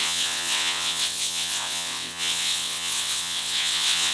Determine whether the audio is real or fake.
fake